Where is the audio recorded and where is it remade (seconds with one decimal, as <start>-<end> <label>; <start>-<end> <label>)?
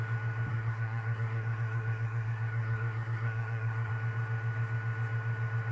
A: 0.0-0.5 recorded; 0.5-3.9 remade; 3.9-5.7 recorded